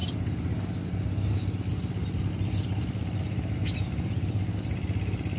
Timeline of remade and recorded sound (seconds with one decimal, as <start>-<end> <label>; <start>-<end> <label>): 0.0-2.3 recorded; 2.3-5.4 remade